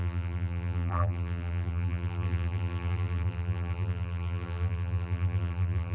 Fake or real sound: fake